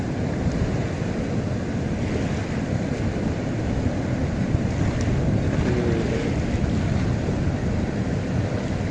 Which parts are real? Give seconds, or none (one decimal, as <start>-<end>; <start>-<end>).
0.0-8.9